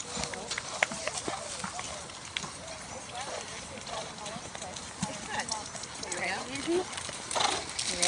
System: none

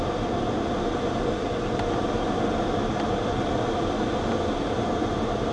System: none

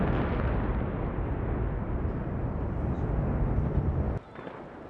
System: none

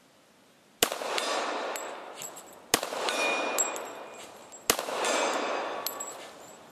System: none